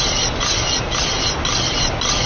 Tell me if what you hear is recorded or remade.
recorded